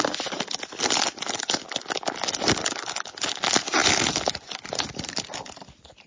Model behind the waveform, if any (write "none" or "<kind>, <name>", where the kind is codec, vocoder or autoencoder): none